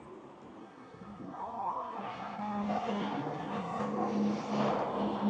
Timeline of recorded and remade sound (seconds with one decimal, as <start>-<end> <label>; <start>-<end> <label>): 0.0-0.6 recorded; 0.6-3.8 remade; 3.8-5.3 recorded